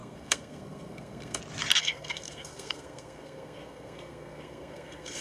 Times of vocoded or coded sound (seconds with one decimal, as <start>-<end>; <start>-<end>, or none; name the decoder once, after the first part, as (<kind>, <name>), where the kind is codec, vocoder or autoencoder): 0.0-1.4 (codec, SNAC); 1.8-5.2